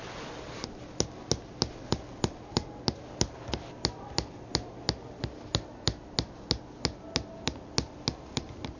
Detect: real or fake real